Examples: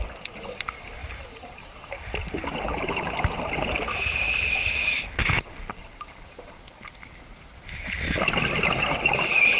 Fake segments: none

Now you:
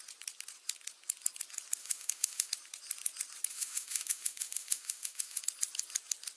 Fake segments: 1.8-2.5 (autoencoder, DAC-VAE); 3.5-5.4

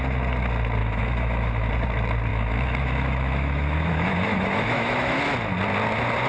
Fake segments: 0.8-1.7 (autoencoder, DAC-VAE); 2.3-5.2

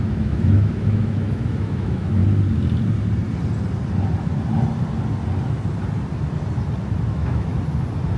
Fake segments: 0.0-2.2 (autoencoder, DAC-VAE); 7.1-7.5

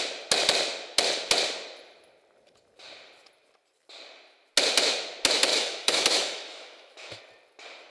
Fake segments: 5.5-7.2 (autoencoder, DAC-VAE)

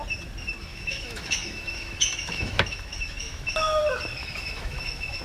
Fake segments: 0.7-3.8 (autoencoder, DAC-VAE); 4.2-5.2

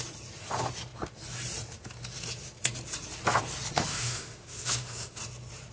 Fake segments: 3.9-5.2 (autoencoder, DAC-VAE)

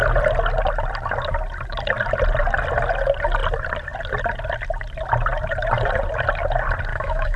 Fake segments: 6.9-7.4 (autoencoder, DAC-VAE)